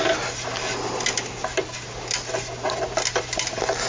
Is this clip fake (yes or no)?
no